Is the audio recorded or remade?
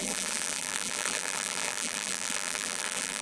remade